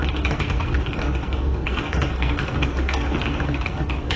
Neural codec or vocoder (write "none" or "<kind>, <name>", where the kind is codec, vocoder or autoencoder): codec, SNAC